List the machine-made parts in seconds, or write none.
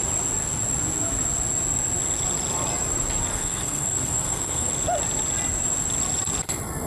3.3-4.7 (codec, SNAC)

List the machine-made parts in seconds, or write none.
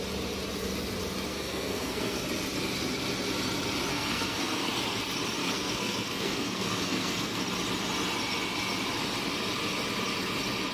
1.3-2.2 (codec, SNAC); 3.9-4.7; 5.4-7.4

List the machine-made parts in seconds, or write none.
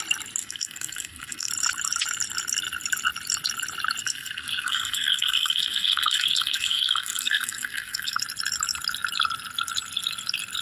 0.4-1.5 (codec, SNAC); 4.0-8.2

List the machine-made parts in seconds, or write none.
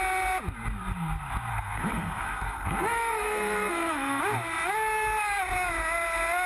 1.5-4.2 (codec, SNAC)